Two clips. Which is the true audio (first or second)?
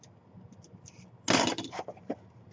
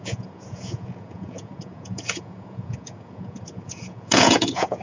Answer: first